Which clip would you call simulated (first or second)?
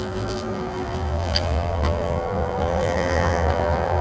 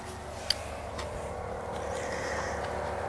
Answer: first